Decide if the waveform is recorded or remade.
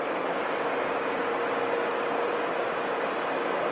recorded